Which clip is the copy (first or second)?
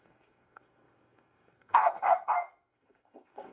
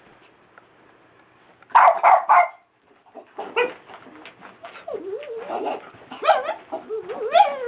first